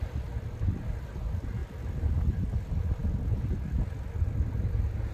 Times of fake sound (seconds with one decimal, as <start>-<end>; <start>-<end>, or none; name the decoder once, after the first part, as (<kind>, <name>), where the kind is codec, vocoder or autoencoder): none